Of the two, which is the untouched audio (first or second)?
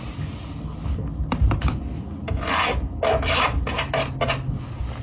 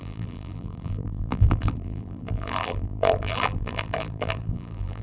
first